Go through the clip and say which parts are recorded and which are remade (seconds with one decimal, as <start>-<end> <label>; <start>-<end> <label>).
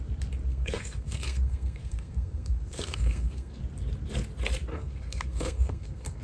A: 0.0-0.5 recorded; 0.5-3.6 remade; 3.6-4.7 recorded; 4.7-6.2 remade